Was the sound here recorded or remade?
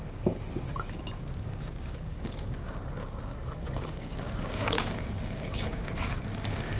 remade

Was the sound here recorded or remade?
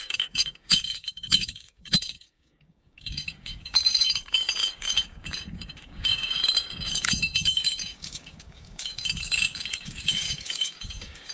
remade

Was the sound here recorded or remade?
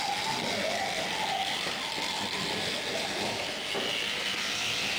recorded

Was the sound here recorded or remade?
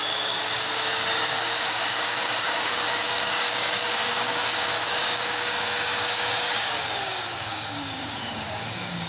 remade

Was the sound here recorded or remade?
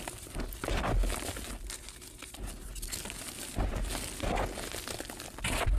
recorded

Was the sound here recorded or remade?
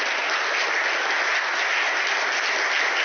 recorded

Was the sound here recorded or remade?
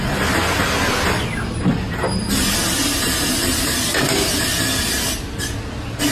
recorded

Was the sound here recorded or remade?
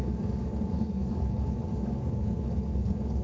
remade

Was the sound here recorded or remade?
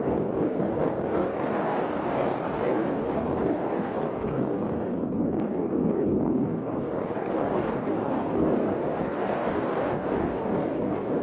remade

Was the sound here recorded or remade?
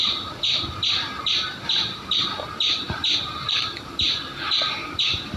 recorded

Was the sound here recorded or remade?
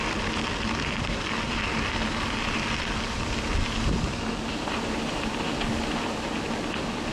recorded